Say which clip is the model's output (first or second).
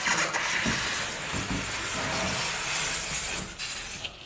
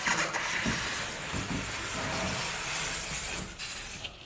second